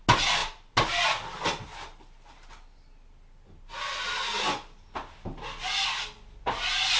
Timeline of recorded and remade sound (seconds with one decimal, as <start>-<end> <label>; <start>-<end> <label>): 0.0-7.0 recorded